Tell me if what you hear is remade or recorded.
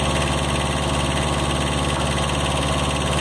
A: recorded